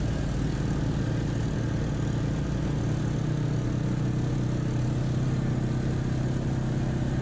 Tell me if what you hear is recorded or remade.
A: recorded